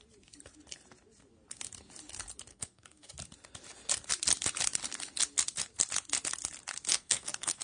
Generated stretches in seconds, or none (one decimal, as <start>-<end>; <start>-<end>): 2.5-3.1; 6.9-7.6